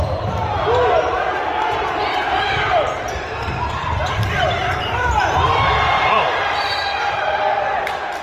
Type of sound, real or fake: fake